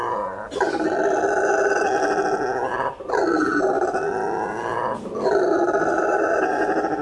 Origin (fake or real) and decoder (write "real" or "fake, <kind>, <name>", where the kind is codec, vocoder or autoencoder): real